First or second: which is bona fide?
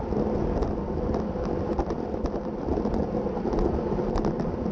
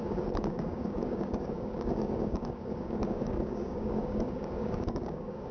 first